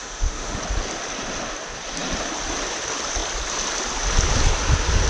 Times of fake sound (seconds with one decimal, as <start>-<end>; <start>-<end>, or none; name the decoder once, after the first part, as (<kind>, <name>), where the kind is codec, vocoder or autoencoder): 0.0-0.6 (autoencoder, DAC-VAE)